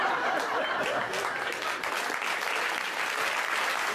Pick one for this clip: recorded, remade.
recorded